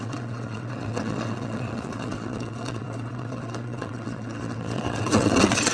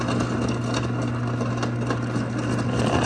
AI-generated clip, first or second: first